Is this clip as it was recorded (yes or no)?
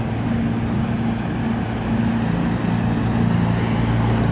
yes